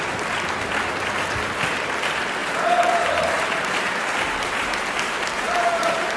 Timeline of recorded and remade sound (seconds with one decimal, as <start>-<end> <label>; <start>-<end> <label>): 0.0-2.4 recorded; 2.4-6.2 remade